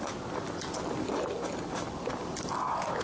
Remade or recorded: recorded